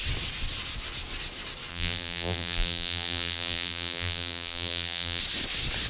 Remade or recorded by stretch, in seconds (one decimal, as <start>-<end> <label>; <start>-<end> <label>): 0.0-1.7 recorded; 1.7-5.2 remade; 5.2-5.9 recorded